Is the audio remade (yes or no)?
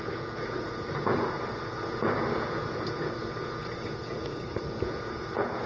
yes